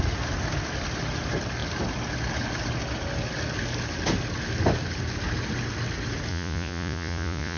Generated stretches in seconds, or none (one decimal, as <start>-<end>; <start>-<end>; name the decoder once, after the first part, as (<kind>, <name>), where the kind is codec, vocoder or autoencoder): 6.3-7.6 (vocoder, Vocos)